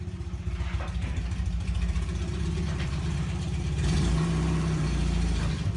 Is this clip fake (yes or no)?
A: yes